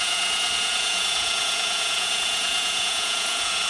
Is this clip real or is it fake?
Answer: fake